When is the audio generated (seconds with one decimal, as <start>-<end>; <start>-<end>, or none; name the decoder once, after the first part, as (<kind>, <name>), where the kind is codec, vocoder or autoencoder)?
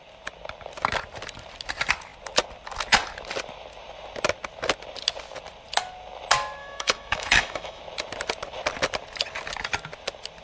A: 6.6-7.8 (autoencoder, DAC-VAE)